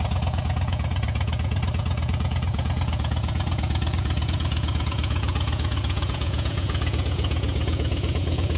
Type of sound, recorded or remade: remade